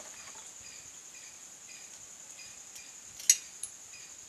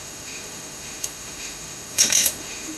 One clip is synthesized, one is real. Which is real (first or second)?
first